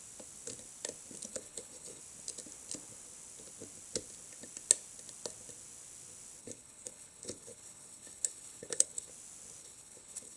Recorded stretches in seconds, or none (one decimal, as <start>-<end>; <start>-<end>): 0.0-1.3; 2.0-6.4; 9.1-9.6

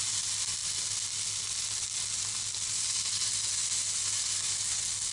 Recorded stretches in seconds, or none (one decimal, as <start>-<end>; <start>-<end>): 0.0-5.1

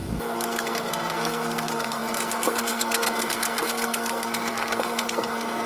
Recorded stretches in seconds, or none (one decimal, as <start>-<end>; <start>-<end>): none